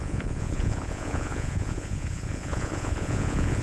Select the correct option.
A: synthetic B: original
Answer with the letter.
A